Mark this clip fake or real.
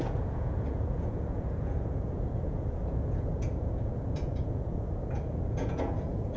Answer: fake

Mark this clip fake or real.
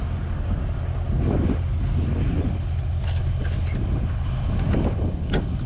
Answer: real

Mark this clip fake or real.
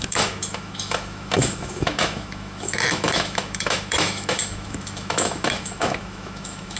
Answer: fake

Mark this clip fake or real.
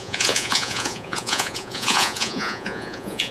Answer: fake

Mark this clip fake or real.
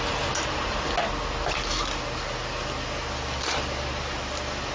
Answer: real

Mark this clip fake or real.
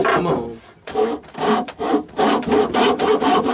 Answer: fake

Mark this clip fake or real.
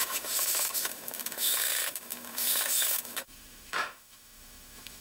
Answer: fake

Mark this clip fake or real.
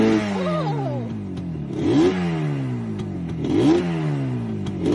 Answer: real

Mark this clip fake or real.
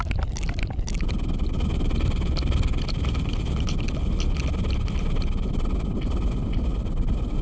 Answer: real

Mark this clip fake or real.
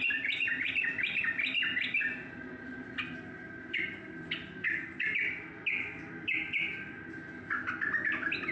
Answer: real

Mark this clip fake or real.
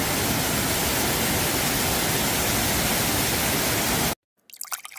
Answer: real